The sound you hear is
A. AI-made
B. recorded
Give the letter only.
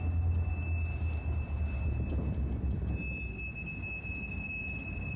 B